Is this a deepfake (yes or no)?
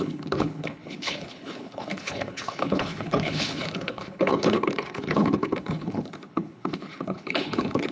yes